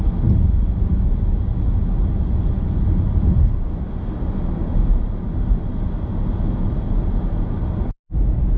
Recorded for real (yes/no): yes